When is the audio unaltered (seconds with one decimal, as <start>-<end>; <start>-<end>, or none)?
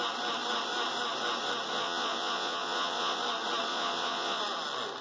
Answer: 0.0-1.7; 3.2-3.7; 4.4-5.0